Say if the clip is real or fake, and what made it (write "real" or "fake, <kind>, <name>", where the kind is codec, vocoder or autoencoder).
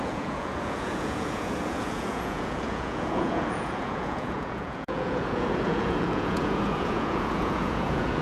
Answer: fake, vocoder, Vocos